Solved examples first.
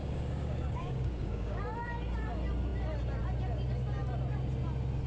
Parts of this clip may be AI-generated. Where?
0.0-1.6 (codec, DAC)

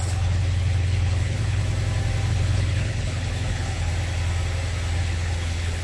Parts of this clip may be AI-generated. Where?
0.0-1.6 (codec, HILCodec); 2.3-3.9; 5.0-5.8

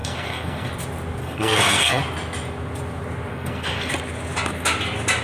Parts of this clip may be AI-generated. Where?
0.0-0.7 (codec, SNAC); 1.2-2.0; 3.3-3.9

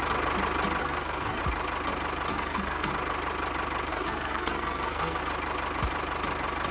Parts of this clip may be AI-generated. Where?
0.8-1.4 (codec, SNAC); 2.3-2.9; 3.9-5.2